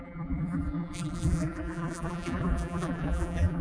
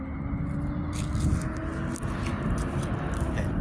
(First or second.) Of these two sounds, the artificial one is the first